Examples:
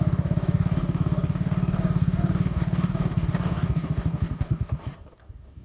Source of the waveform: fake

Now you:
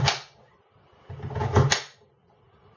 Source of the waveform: real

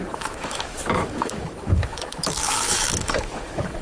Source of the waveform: fake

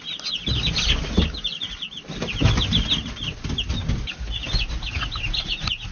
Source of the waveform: real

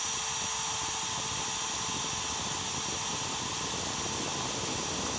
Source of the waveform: real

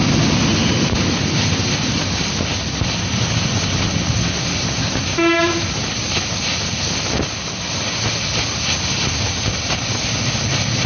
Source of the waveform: real